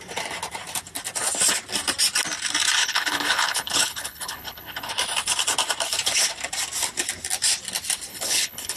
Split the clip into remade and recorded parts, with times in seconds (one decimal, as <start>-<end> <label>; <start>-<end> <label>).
0.0-2.8 recorded; 2.8-4.9 remade; 4.9-8.1 recorded; 8.1-8.8 remade